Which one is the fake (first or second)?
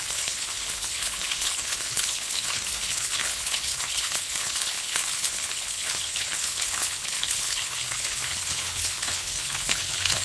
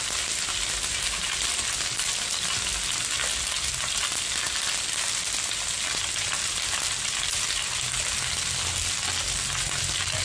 first